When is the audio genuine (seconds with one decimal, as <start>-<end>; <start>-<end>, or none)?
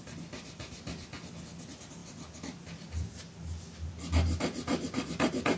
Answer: 0.0-5.6